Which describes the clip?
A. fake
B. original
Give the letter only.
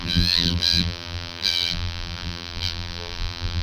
A